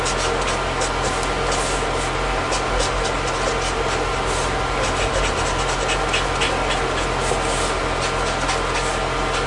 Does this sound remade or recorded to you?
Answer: recorded